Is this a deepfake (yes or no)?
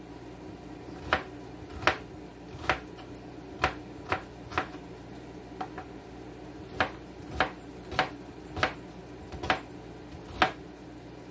no